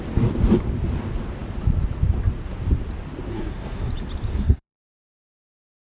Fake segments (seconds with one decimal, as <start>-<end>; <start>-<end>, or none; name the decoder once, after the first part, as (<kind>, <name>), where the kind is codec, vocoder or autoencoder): 3.3-3.9 (codec, SNAC); 4.3-4.8